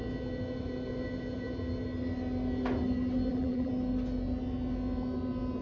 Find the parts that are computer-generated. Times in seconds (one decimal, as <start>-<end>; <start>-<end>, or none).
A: 3.3-3.7